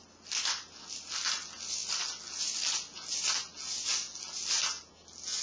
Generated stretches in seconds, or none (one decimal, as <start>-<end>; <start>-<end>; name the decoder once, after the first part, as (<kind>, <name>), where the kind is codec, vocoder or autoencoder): none